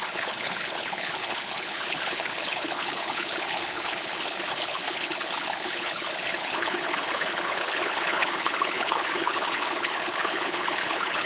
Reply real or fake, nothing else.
fake